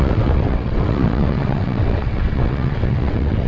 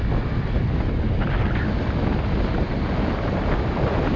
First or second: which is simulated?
first